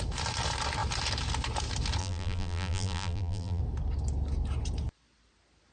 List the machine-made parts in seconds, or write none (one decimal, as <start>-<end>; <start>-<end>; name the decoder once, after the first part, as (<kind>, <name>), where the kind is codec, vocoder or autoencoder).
2.0-3.6 (vocoder, BigVGAN v2)